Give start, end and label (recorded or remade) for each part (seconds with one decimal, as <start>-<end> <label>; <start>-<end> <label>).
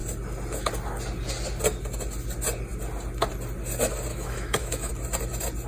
0.0-4.1 recorded; 4.1-4.9 remade; 4.9-5.7 recorded